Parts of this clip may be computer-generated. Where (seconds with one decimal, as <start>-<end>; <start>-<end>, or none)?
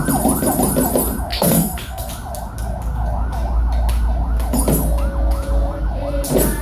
1.3-2.1